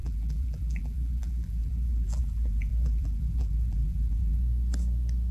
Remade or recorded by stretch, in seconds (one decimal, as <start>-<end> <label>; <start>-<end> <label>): 0.0-4.4 remade; 4.4-5.3 recorded